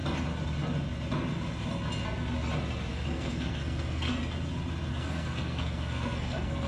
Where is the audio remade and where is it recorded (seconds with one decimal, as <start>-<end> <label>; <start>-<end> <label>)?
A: 0.0-2.9 recorded; 2.9-4.1 remade; 4.1-4.9 recorded; 4.9-6.7 remade